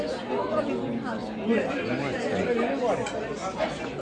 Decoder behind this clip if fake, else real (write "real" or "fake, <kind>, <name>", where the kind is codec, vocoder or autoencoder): real